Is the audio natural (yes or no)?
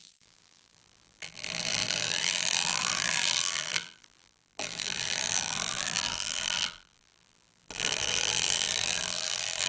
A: no